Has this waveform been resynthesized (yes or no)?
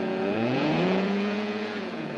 yes